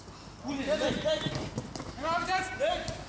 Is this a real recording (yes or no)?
yes